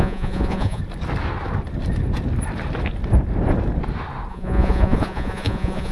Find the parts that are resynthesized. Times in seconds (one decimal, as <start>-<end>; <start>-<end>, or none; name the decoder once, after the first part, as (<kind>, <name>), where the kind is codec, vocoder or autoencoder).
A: 0.0-0.8 (vocoder, Vocos); 4.3-5.9